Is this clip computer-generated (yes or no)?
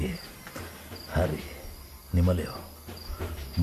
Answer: no